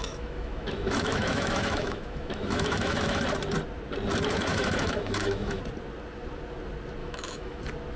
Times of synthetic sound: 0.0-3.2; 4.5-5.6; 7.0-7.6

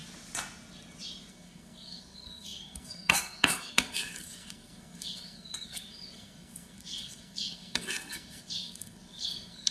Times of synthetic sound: 1.3-9.7

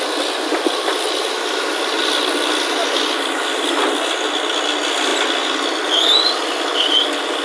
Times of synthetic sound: none